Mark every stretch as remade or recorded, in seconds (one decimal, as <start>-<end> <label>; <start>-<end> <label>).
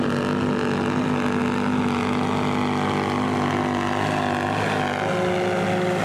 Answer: 0.0-6.0 recorded